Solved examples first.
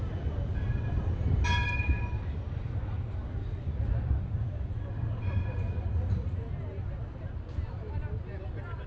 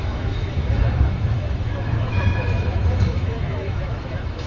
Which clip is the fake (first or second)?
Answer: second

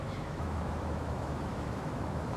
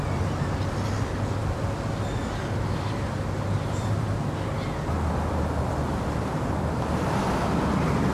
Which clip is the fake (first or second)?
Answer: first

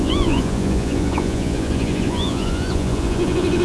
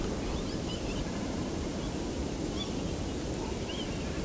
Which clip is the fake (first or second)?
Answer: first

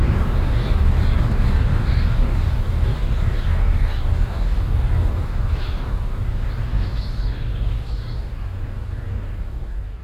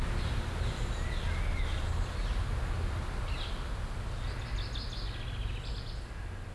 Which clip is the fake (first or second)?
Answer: first